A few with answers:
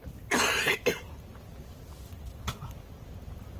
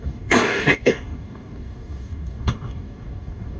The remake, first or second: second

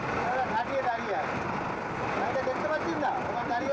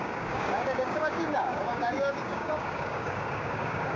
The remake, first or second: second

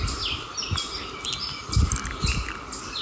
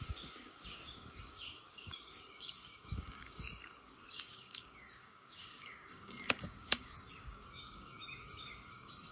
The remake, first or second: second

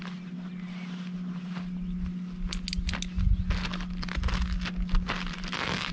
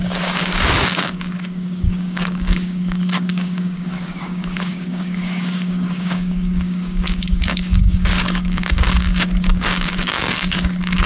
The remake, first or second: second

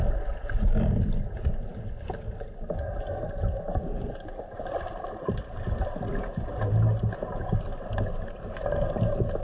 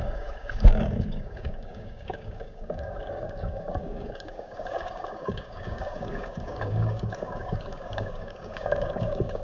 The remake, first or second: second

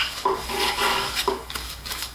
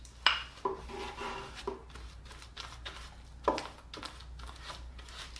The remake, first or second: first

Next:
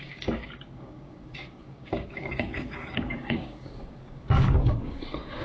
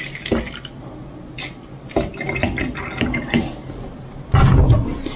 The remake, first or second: first